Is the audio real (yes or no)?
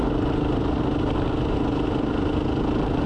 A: yes